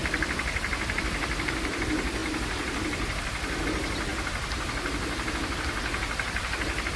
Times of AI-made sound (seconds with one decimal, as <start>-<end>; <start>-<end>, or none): none